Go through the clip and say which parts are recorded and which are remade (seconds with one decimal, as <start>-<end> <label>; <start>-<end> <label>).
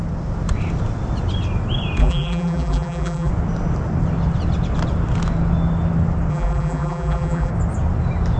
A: 0.0-2.0 recorded; 2.0-3.3 remade; 3.3-6.3 recorded; 6.3-7.5 remade; 7.5-8.4 recorded